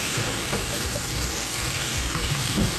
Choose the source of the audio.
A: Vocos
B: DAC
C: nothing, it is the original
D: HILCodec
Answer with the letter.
B